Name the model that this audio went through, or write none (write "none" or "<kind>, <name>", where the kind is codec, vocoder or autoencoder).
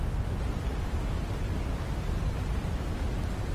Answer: none